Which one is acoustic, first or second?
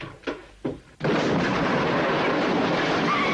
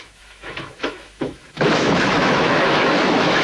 first